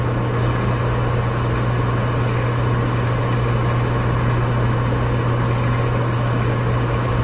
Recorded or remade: recorded